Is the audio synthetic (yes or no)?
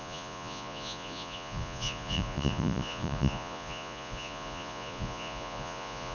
yes